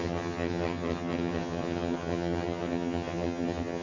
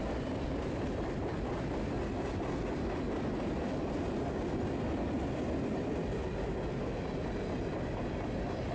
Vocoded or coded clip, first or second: first